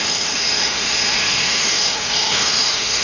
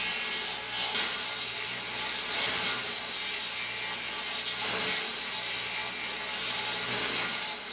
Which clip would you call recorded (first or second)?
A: second